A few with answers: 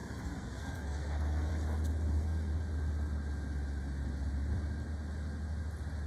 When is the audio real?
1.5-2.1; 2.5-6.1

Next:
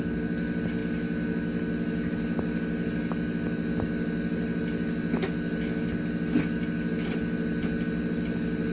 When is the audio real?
0.0-8.7

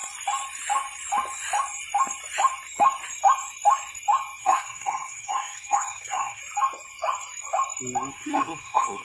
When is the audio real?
0.0-4.4; 6.4-8.1

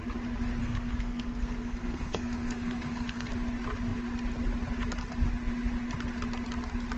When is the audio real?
0.0-0.6; 3.3-7.0

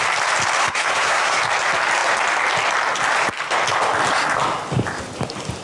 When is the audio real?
0.0-0.6; 1.4-5.6

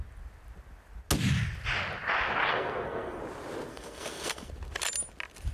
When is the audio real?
0.0-2.5; 3.2-3.7; 4.5-5.5

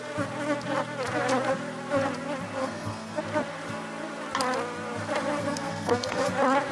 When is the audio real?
0.0-2.6; 3.2-5.4; 6.3-6.7